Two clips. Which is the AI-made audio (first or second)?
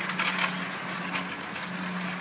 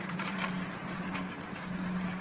second